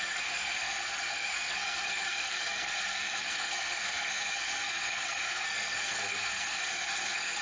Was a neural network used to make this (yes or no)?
yes